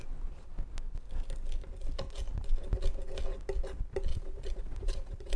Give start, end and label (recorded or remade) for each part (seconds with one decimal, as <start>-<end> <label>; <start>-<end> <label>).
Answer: 0.0-4.1 recorded; 4.1-5.4 remade